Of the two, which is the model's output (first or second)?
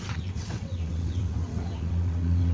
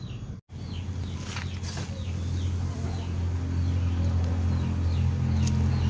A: first